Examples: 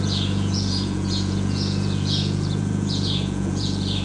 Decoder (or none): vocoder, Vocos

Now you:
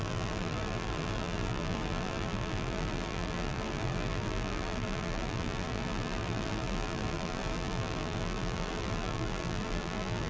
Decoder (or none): vocoder, BigVGAN v2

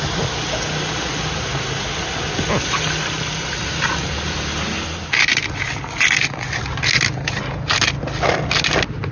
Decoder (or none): none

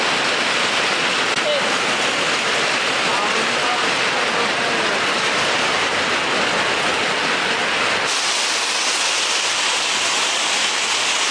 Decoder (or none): none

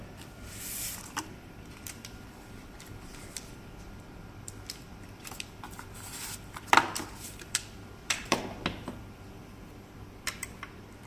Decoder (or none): vocoder, BigVGAN v2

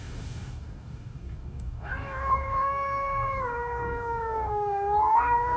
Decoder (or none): codec, DAC